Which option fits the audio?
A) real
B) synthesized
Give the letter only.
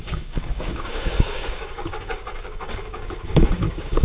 B